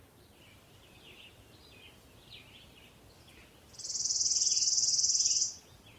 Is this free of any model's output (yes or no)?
yes